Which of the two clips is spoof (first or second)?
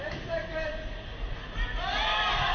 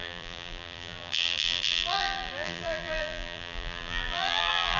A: second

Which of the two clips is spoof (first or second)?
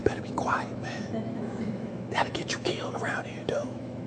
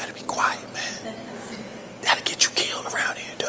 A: first